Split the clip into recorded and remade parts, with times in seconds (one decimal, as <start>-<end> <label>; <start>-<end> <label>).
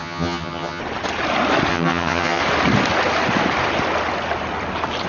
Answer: 0.0-0.8 remade; 0.8-1.7 recorded; 1.7-2.4 remade; 2.4-5.1 recorded